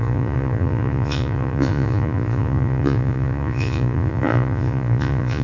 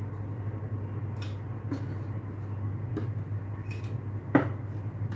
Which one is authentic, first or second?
second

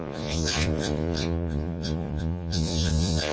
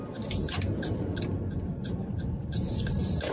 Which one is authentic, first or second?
second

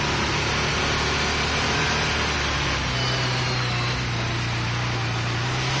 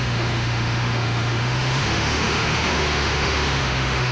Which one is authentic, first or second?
first